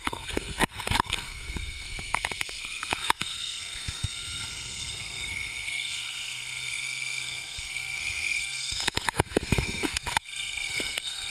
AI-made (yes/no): yes